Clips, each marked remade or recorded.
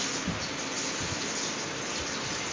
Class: recorded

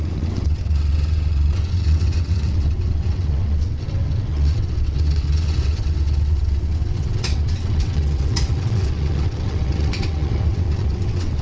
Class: remade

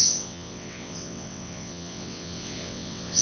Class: remade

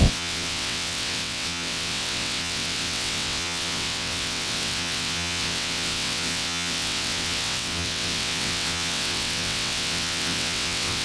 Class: remade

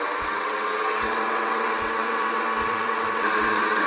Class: remade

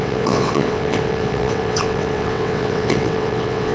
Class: remade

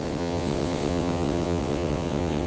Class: remade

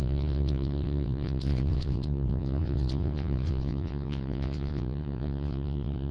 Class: remade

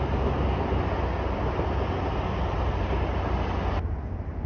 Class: recorded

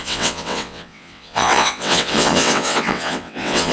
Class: remade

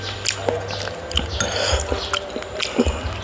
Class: recorded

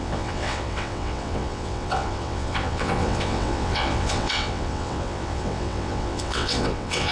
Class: remade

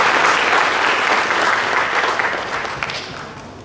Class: recorded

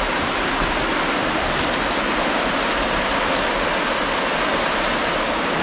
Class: recorded